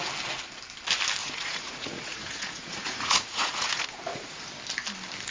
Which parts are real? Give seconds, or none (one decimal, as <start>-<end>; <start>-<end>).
0.0-1.2; 4.4-5.3

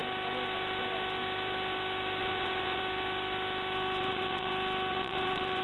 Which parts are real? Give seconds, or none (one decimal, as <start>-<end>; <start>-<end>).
0.0-2.2; 2.8-4.0; 4.5-4.9

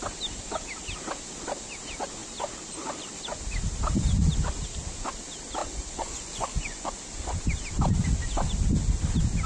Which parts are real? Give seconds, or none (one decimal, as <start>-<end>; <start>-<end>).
0.0-5.6; 6.9-9.5

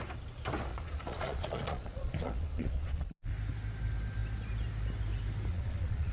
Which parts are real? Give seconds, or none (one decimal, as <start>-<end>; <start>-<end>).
0.0-0.7; 3.3-5.5

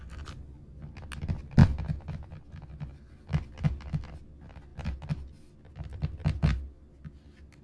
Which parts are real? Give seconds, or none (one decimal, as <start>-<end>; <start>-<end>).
0.0-7.6

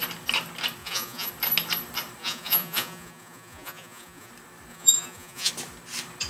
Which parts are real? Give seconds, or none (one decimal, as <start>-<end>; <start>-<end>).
0.0-0.8; 1.3-2.2; 4.3-4.7; 5.5-6.3